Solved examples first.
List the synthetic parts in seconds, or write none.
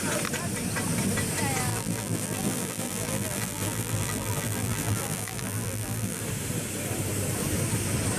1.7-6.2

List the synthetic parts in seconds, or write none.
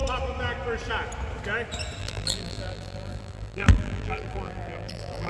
2.0-5.3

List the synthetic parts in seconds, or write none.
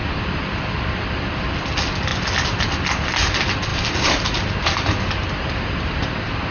3.7-6.0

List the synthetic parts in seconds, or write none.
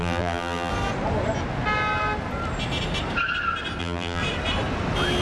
0.0-0.7; 3.8-4.2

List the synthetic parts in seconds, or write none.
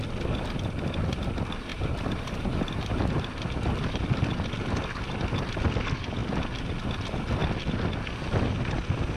1.7-4.0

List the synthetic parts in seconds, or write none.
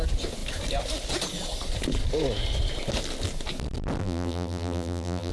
4.0-5.3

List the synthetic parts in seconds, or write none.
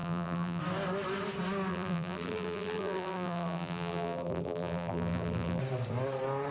0.0-0.6; 1.7-5.6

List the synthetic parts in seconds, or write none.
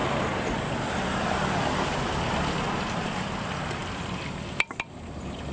0.0-5.5